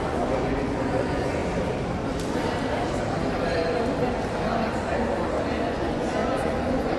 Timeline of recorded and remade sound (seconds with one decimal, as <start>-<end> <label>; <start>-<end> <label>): 0.0-1.4 remade; 1.4-5.6 recorded; 5.6-7.0 remade